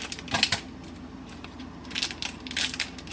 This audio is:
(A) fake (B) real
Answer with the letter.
B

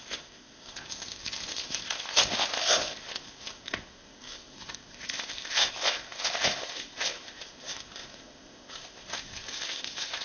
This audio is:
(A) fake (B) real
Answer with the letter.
A